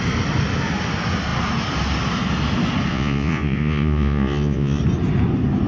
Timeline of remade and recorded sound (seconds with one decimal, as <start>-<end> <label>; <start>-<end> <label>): 0.0-2.9 recorded; 2.9-4.8 remade; 4.8-5.7 recorded